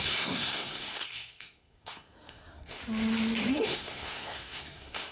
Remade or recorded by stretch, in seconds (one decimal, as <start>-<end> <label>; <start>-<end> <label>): 0.0-2.8 remade; 2.8-3.5 recorded; 3.5-5.1 remade